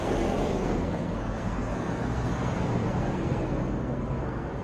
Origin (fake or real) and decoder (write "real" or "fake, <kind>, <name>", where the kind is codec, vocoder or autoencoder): fake, codec, SNAC